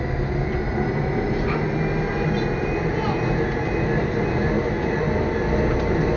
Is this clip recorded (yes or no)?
yes